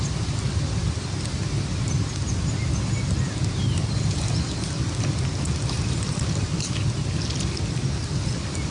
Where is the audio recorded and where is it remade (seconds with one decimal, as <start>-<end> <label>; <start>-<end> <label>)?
0.0-8.7 recorded